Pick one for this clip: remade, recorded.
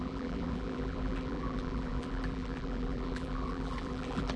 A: remade